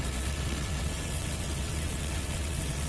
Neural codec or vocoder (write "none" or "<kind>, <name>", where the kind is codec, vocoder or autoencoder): vocoder, WaveNeXt